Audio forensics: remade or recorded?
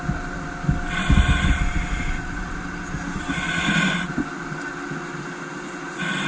recorded